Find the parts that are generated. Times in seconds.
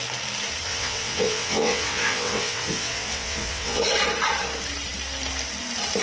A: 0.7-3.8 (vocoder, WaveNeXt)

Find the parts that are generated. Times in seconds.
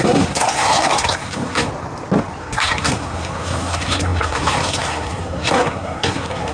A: 0.0-1.7 (codec, SNAC); 2.4-6.5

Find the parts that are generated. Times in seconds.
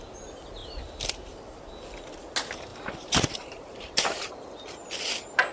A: 0.6-1.6 (vocoder, BigVGAN v2); 2.7-4.3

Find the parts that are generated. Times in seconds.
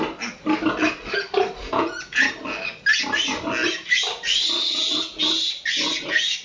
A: 1.6-2.3 (vocoder, Vocos)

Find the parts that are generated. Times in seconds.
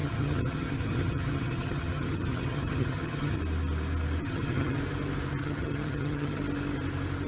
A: 0.0-3.4 (vocoder, HiFi-GAN); 4.2-4.8; 5.4-6.4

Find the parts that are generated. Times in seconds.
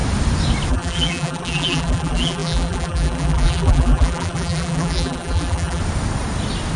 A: 0.7-5.8 (vocoder, BigVGAN v2)